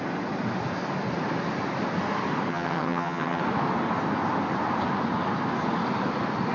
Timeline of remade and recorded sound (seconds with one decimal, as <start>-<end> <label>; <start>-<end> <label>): 0.0-2.5 recorded; 2.5-3.4 remade; 3.4-6.5 recorded